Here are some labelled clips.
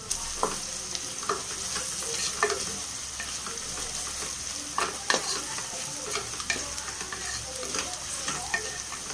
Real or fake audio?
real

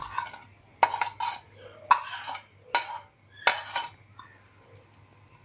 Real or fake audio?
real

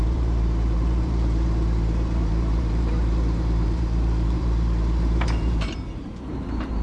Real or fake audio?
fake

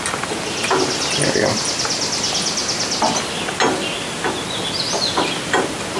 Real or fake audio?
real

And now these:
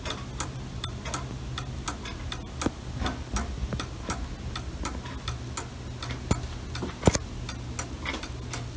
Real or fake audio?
real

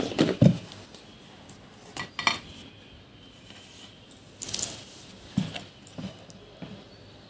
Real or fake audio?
real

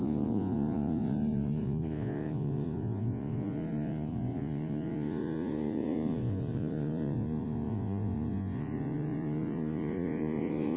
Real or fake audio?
fake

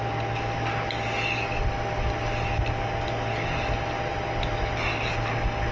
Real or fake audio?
real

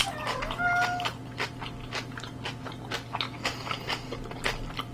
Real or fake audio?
real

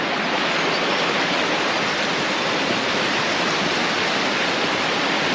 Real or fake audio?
real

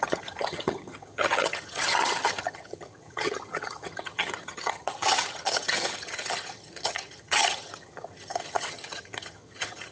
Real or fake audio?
fake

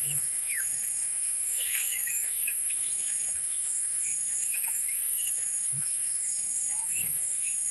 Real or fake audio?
fake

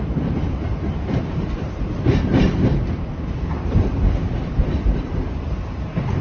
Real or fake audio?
fake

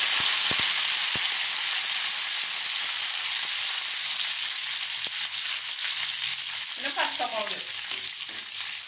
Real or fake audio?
real